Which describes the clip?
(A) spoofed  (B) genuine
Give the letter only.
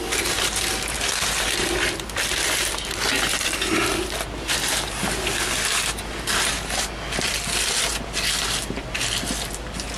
B